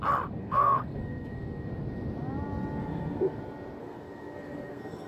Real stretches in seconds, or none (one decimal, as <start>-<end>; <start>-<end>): 0.0-0.4; 1.7-2.8; 3.4-3.8